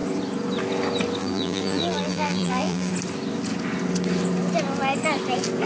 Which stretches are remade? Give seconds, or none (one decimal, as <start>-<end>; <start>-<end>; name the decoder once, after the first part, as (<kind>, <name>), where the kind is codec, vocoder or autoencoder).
1.2-2.9 (vocoder, BigVGAN v2)